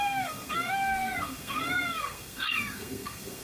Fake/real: fake